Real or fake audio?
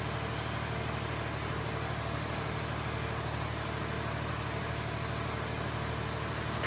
real